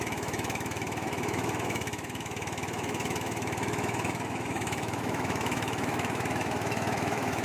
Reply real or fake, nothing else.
fake